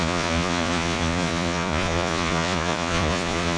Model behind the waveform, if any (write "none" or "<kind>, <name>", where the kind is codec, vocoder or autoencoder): vocoder, Vocos